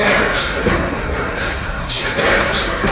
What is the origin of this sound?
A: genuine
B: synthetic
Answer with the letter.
B